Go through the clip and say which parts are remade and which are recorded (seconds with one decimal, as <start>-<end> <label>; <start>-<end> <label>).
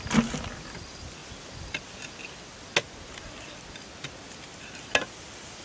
0.0-5.6 recorded